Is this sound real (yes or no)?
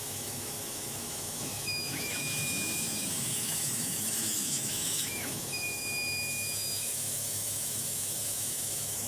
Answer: no